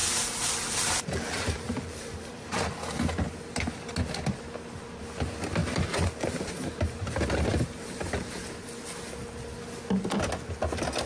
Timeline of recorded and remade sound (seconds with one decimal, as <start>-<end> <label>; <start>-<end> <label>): 0.0-2.7 remade; 2.7-5.6 recorded; 5.6-6.8 remade; 6.8-7.5 recorded; 7.5-8.4 remade; 8.4-11.1 recorded